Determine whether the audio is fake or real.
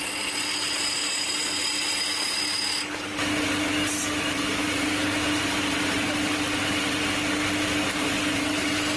real